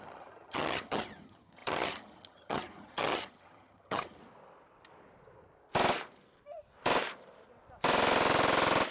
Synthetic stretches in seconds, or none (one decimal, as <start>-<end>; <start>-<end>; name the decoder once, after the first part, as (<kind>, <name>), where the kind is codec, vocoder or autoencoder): 0.0-4.2 (vocoder, HiFi-GAN)